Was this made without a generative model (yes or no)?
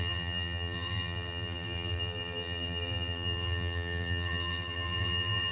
no